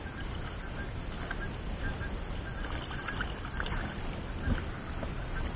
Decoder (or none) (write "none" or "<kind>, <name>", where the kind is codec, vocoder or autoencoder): none